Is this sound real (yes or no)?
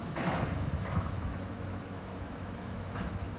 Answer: no